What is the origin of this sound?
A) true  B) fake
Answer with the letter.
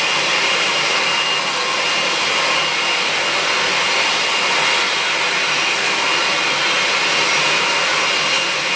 A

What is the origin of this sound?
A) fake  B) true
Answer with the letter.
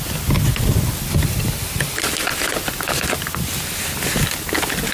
B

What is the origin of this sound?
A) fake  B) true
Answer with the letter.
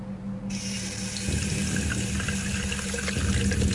B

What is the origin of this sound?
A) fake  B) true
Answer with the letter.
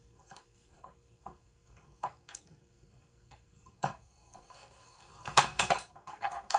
A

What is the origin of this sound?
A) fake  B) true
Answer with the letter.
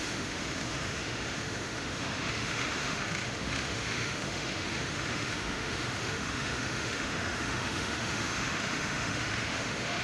A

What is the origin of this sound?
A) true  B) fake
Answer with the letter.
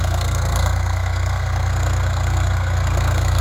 B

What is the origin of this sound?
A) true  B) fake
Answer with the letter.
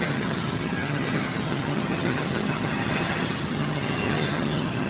B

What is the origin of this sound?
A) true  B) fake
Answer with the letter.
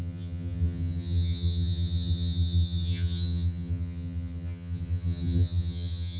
B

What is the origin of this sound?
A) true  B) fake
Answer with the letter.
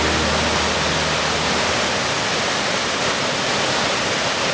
A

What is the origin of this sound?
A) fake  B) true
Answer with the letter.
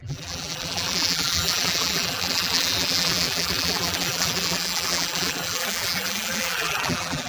A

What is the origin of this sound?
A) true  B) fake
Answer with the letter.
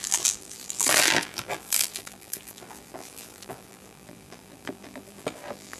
B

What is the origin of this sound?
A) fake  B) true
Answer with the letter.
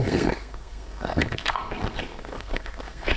A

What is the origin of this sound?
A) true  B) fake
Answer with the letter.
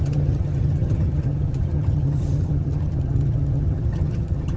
B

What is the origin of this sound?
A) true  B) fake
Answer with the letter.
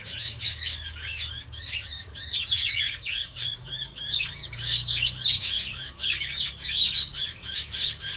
B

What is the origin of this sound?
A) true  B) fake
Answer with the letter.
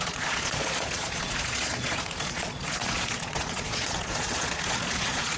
B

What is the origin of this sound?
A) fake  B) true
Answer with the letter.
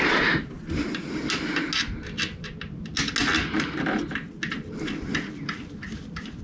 B